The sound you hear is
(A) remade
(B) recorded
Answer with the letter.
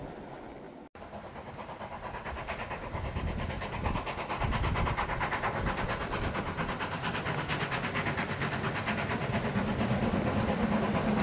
B